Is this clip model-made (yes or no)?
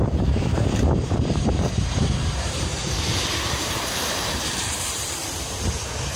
yes